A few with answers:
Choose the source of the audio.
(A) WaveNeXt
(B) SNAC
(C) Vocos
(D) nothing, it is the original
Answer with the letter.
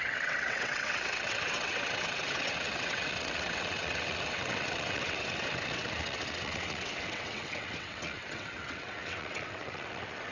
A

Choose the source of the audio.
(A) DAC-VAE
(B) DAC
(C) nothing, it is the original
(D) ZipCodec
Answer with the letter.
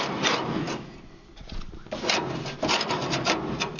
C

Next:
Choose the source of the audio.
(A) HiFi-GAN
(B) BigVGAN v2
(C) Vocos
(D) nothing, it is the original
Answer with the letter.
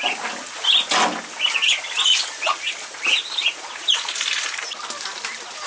D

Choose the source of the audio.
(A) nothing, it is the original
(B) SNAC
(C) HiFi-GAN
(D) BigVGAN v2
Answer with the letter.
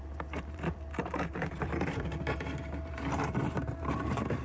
D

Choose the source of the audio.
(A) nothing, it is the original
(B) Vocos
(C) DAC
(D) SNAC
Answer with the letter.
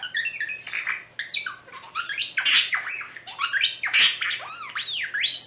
A